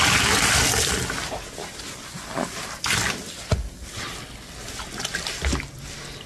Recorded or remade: recorded